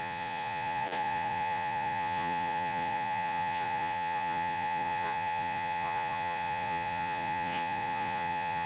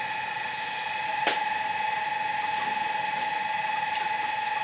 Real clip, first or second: second